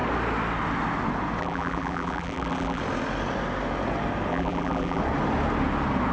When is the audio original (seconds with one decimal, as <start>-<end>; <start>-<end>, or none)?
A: 0.0-1.4; 2.8-4.3; 5.0-6.1